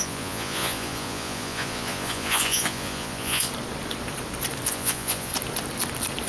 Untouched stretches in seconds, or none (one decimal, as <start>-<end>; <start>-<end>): 3.5-4.7; 5.3-6.3